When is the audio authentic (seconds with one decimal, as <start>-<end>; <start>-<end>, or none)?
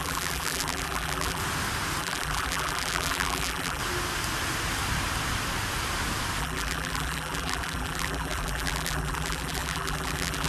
1.4-2.0; 3.8-6.4